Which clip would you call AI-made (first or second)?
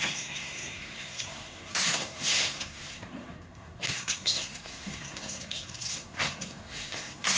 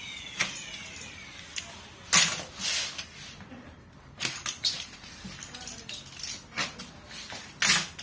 first